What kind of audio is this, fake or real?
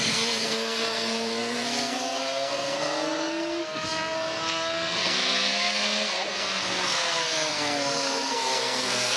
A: fake